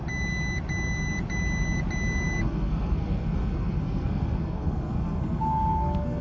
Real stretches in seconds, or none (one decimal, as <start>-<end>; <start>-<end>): 0.0-2.4